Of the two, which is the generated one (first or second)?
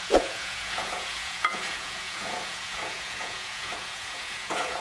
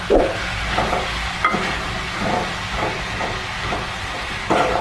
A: first